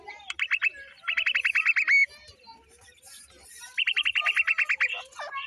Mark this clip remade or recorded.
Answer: recorded